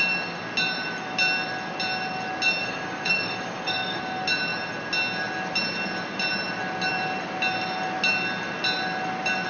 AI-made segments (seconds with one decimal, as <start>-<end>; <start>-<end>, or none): 2.6-4.0